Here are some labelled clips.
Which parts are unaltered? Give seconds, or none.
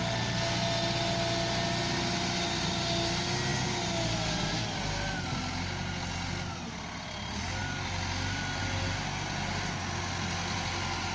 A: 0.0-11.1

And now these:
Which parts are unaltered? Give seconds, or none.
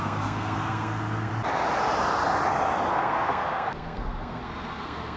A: 1.3-2.9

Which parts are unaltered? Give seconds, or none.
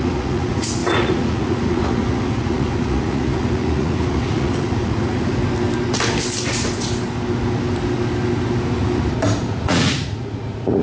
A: 5.4-9.5